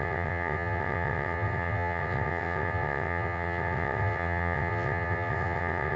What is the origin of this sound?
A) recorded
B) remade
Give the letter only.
B